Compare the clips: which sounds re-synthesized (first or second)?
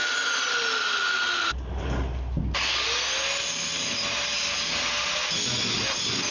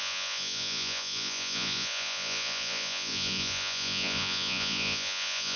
second